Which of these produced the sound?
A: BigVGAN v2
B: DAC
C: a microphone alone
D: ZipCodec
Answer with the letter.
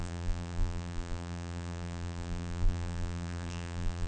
A